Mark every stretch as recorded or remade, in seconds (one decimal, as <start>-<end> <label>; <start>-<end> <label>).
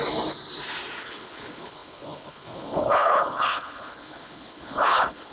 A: 0.0-1.0 recorded; 1.0-5.3 remade